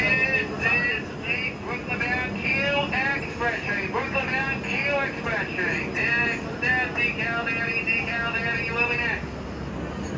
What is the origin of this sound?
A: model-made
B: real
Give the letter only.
B